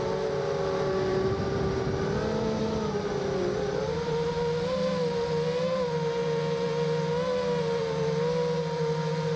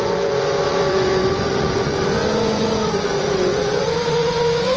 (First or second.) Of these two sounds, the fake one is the second